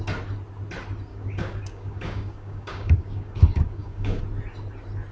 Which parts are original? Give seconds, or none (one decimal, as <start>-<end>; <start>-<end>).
0.0-1.1; 4.2-5.1